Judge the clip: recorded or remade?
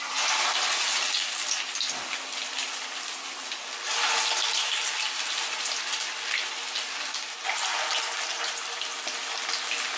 recorded